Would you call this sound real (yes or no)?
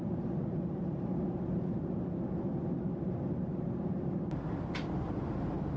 yes